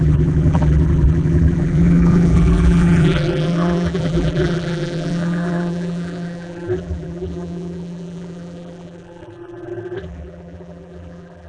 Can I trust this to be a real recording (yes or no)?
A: no